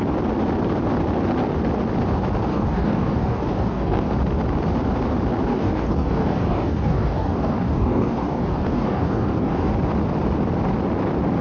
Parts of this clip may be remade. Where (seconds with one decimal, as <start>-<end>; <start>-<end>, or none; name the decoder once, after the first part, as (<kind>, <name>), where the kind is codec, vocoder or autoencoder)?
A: 2.5-4.1 (codec, DAC); 5.5-9.7